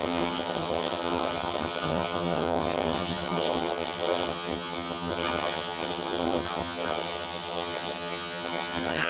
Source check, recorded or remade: remade